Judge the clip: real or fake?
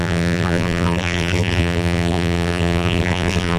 fake